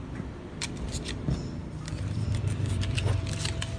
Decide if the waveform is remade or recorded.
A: remade